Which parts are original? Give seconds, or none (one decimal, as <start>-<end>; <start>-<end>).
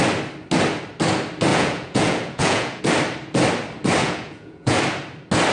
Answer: 0.0-1.5; 2.8-4.0; 4.8-5.5